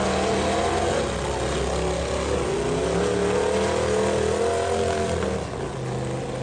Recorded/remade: recorded